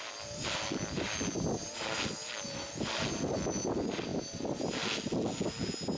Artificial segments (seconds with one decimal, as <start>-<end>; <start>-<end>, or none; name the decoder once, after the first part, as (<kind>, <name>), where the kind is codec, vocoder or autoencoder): none